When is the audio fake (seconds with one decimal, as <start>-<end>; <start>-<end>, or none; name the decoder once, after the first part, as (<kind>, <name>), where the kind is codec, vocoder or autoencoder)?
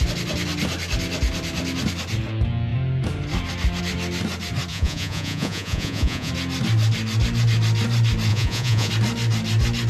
4.7-6.3 (vocoder, Vocos); 8.3-8.9